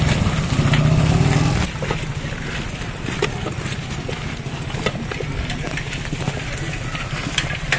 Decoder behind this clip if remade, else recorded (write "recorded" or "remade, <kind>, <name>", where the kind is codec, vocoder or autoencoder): recorded